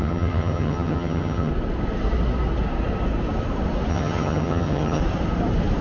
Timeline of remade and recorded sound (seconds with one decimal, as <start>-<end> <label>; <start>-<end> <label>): 0.0-1.5 remade; 1.5-3.9 recorded; 3.9-5.0 remade; 5.0-5.8 recorded